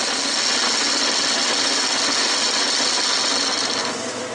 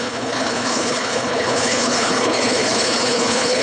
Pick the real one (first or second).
first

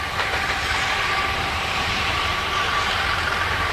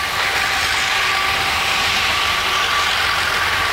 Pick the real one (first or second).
second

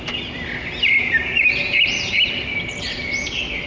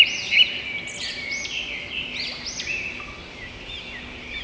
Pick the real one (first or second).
second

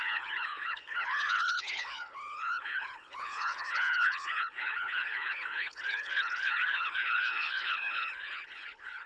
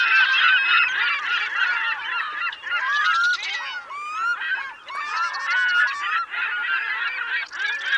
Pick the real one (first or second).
second